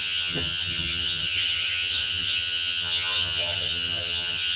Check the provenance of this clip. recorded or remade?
remade